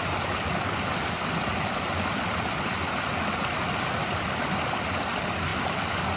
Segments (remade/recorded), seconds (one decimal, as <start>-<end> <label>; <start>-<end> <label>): 0.0-6.2 recorded